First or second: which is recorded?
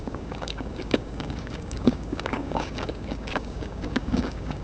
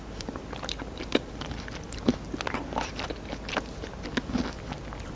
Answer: second